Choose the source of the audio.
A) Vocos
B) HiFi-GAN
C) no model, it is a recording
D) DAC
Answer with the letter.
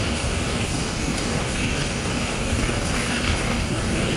D